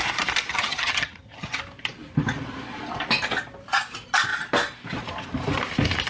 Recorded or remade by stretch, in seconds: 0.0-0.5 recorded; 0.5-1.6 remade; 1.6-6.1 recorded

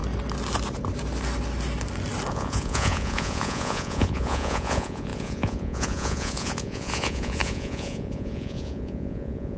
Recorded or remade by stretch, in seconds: 0.0-2.3 recorded; 2.3-9.6 remade

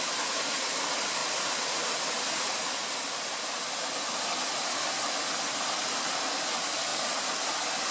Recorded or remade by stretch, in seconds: 0.0-7.9 recorded

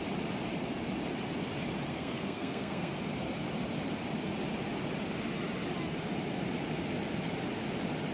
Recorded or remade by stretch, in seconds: 0.0-1.9 recorded; 1.9-2.9 remade; 2.9-8.1 recorded

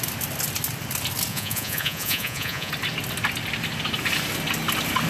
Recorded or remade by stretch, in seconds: 0.0-1.3 recorded; 1.3-2.7 remade; 2.7-5.1 recorded

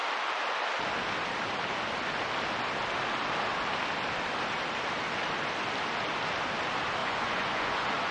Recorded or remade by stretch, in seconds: 0.0-7.0 recorded; 7.0-8.1 remade